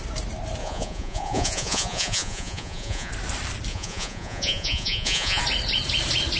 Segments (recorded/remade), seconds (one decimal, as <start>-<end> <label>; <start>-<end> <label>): 0.0-0.6 recorded; 0.6-3.1 remade; 3.1-3.7 recorded; 3.7-5.4 remade; 5.4-6.4 recorded